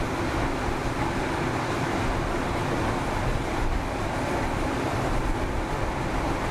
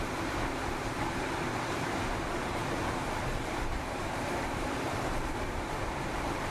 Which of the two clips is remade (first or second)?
second